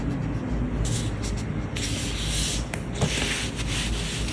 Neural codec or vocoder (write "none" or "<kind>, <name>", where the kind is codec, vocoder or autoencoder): none